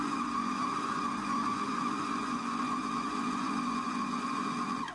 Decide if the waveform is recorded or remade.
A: remade